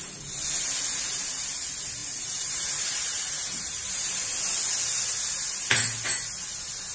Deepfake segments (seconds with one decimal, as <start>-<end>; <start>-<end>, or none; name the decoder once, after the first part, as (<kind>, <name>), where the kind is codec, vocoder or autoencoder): 2.0-4.2 (vocoder, BigVGAN v2)